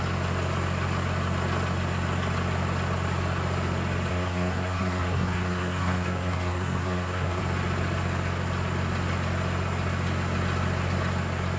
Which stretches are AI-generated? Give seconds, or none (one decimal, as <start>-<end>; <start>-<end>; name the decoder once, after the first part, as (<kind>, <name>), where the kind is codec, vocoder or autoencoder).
4.1-7.4 (codec, SNAC)